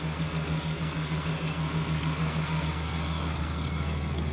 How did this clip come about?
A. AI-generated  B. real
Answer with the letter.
A